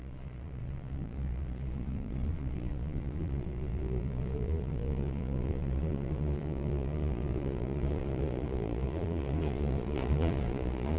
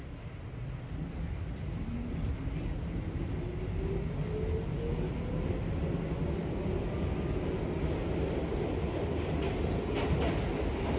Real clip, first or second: second